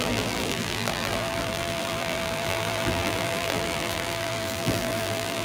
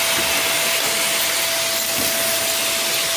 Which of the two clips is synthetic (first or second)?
first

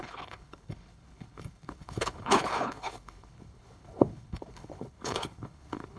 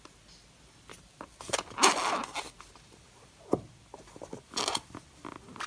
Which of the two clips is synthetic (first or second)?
first